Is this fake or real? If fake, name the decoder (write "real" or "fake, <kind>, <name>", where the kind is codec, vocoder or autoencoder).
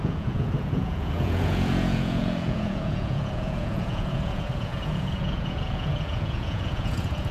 fake, vocoder, Vocos